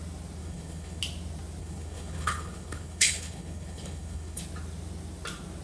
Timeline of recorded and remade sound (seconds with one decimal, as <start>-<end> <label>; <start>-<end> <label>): 0.0-0.4 recorded; 0.4-1.0 remade; 1.0-1.6 recorded; 1.6-4.4 remade; 4.4-5.6 recorded